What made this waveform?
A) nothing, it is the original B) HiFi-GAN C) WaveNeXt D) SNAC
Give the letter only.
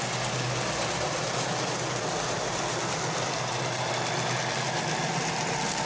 A